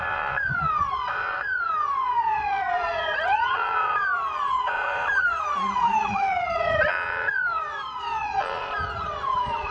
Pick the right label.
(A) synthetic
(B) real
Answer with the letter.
A